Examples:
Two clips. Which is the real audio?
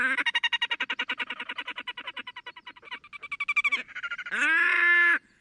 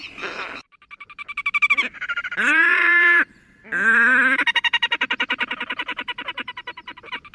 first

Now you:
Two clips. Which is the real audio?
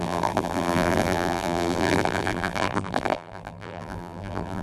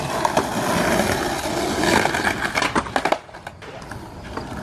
second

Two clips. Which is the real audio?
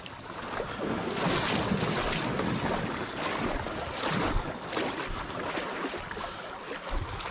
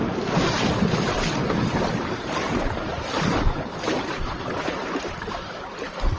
first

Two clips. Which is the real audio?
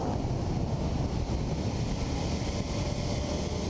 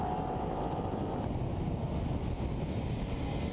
second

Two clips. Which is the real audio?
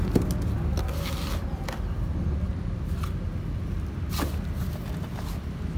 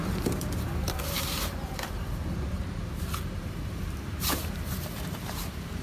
first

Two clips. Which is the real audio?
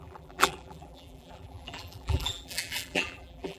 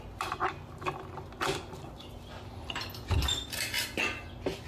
second